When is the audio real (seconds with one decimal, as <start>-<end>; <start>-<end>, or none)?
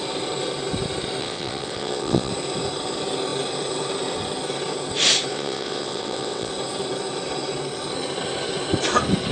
0.0-1.2; 2.3-5.3; 6.5-9.3